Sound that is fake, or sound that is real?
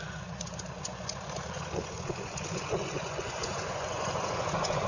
fake